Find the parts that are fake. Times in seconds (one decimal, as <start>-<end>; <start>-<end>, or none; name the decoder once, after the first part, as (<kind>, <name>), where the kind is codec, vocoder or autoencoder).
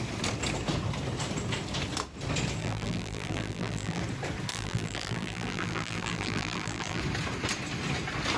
2.6-4.0 (vocoder, BigVGAN v2); 4.5-7.0